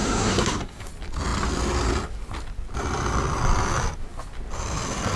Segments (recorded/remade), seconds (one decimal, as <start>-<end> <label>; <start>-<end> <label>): 0.0-0.9 remade; 0.9-5.2 recorded